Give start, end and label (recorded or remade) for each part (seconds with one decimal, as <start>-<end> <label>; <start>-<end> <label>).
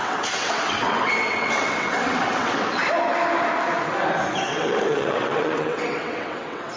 0.0-2.8 remade; 2.8-4.3 recorded; 4.3-6.8 remade